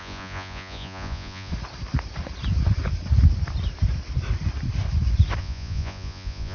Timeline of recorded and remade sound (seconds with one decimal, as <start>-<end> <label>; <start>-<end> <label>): 0.0-1.5 remade; 1.5-5.4 recorded; 5.4-6.5 remade